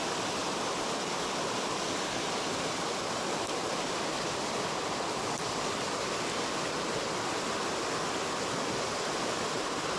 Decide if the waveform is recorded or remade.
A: recorded